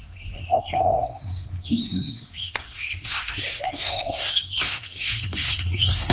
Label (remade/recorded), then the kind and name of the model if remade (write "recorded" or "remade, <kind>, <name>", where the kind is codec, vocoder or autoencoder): remade, codec, SNAC